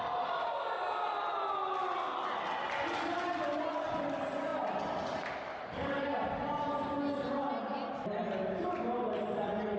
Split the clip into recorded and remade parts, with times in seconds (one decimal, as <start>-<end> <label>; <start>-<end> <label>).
0.0-9.8 recorded